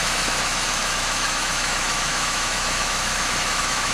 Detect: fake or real fake